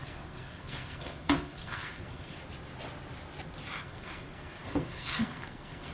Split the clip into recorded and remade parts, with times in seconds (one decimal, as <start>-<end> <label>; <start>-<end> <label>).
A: 0.0-2.4 remade; 2.4-3.8 recorded; 3.8-5.9 remade